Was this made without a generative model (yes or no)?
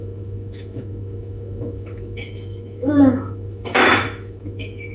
no